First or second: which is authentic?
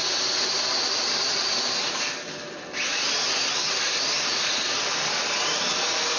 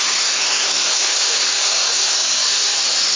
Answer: first